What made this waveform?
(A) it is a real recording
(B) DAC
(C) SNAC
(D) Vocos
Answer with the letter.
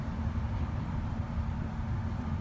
A